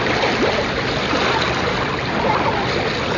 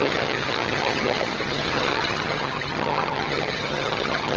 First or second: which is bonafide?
first